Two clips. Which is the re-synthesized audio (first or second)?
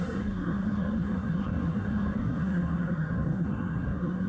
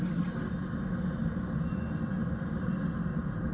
first